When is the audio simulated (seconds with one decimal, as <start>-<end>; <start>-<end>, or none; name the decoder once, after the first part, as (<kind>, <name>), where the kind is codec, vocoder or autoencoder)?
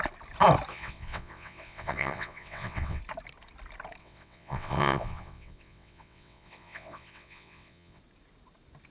0.7-3.0 (vocoder, WaveNeXt); 4.0-8.0